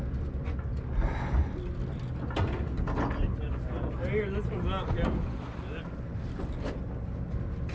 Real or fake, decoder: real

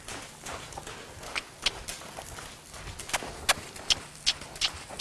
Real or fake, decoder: real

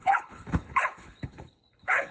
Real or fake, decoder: fake, codec, HILCodec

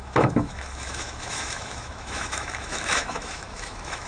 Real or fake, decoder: fake, autoencoder, DAC-VAE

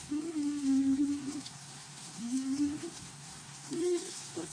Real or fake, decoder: fake, codec, SNAC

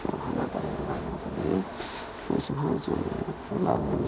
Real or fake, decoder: fake, autoencoder, DAC-VAE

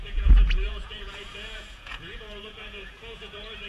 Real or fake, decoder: fake, vocoder, Vocos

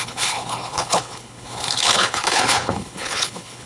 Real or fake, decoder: fake, codec, HILCodec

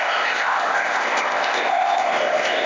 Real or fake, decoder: fake, codec, ZipCodec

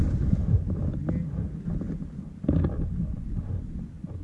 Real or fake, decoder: real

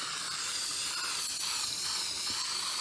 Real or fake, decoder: real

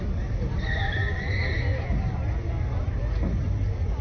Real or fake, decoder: real